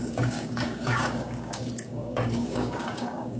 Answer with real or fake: fake